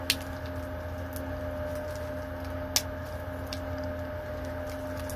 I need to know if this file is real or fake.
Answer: real